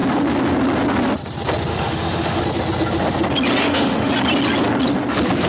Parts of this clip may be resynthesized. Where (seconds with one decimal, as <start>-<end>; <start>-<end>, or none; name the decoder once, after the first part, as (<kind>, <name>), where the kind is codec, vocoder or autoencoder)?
1.7-2.4 (autoencoder, DAC-VAE); 3.6-4.1